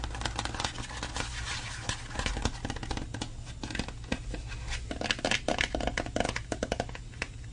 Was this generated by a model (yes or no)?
no